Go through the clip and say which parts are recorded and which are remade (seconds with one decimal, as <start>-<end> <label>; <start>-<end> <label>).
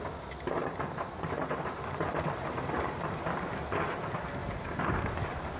0.0-0.6 recorded; 0.6-4.0 remade; 4.0-4.4 recorded; 4.4-5.6 remade